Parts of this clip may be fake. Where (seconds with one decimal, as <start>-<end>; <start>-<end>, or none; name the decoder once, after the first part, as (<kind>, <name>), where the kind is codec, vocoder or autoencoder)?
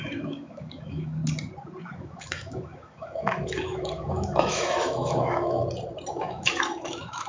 0.0-1.2 (autoencoder, DAC-VAE); 1.8-5.6; 6.1-7.3